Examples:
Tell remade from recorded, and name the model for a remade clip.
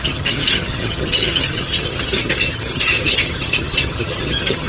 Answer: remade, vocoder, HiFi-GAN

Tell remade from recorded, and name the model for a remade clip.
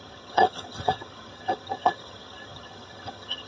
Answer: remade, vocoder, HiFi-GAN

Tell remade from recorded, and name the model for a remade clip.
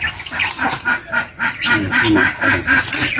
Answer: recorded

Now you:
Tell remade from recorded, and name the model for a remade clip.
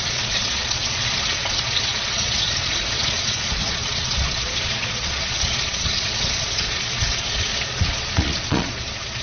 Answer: remade, vocoder, Vocos